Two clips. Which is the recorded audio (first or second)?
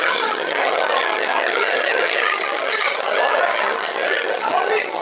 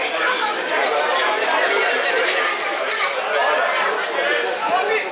second